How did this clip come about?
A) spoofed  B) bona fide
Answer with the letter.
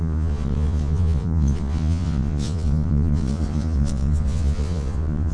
A